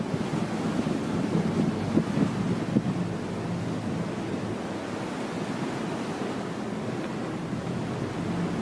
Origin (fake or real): real